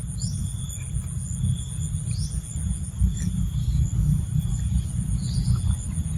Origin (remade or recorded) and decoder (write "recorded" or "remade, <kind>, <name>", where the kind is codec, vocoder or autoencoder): recorded